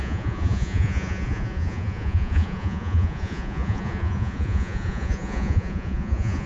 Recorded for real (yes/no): no